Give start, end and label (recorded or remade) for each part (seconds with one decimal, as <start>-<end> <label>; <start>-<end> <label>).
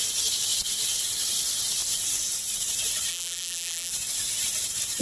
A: 0.0-3.1 recorded; 3.1-3.9 remade; 3.9-5.0 recorded